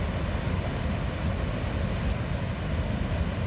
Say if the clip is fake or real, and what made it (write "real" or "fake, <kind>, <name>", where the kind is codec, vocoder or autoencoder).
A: real